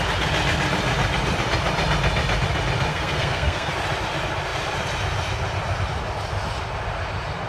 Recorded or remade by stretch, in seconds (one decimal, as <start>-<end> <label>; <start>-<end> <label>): 0.0-2.9 recorded; 2.9-3.7 remade; 3.7-7.5 recorded